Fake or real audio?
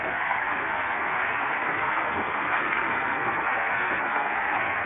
fake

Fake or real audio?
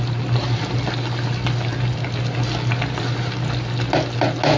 real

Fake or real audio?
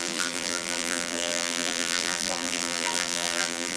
fake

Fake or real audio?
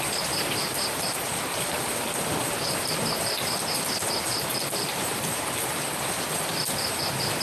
fake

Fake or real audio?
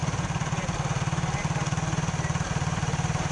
fake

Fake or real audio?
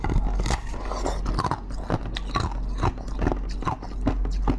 real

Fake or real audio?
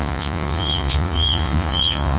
fake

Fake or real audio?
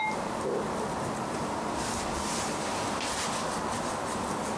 real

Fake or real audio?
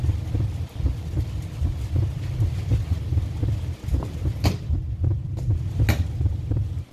real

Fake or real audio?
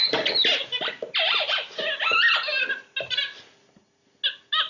real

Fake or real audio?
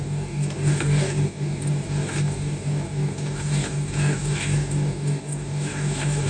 fake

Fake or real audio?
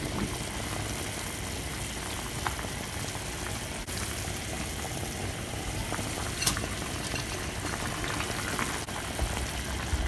real